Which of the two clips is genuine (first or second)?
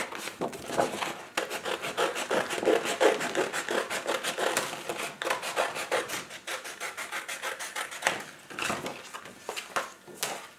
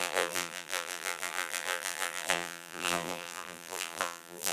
first